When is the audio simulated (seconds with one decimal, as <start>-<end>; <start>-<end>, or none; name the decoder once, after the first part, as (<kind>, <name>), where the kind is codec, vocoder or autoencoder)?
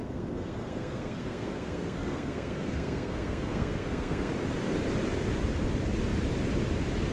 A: 0.0-4.3 (codec, SNAC)